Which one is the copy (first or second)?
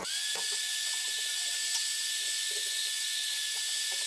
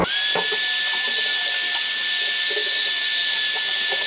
first